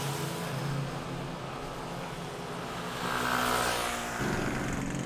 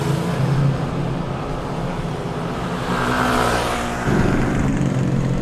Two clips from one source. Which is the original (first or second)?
first